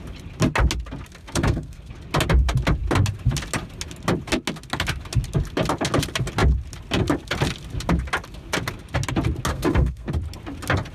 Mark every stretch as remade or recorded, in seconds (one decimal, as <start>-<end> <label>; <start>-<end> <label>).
0.0-1.2 recorded; 1.2-1.9 remade; 1.9-9.5 recorded; 9.5-10.1 remade; 10.1-10.9 recorded